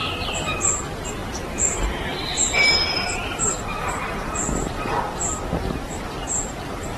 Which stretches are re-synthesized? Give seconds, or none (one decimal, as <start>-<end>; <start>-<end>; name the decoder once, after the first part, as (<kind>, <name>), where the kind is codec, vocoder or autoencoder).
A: 0.0-0.6 (vocoder, BigVGAN v2)